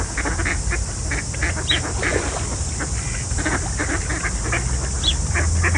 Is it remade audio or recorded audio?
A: recorded